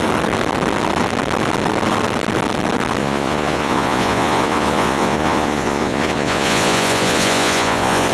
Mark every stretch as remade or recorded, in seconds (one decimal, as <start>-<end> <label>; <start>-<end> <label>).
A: 0.0-3.0 recorded; 3.0-8.1 remade